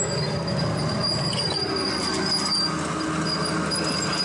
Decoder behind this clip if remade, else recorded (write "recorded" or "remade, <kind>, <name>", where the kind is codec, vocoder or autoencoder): recorded